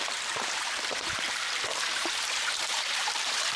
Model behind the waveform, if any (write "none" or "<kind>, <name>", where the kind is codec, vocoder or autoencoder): vocoder, BigVGAN v2